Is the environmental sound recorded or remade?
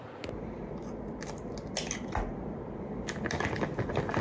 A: recorded